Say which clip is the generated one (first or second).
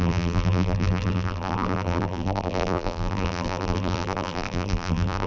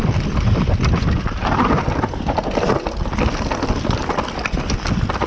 first